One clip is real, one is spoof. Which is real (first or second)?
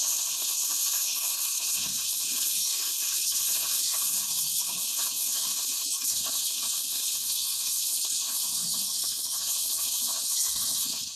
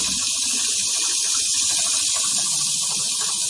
second